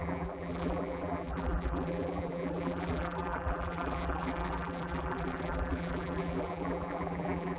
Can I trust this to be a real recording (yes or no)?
no